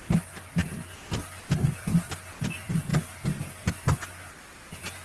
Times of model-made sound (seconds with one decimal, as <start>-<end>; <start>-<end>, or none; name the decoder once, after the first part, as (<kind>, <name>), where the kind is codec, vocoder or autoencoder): none